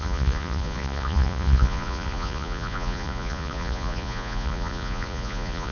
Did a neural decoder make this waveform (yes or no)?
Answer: yes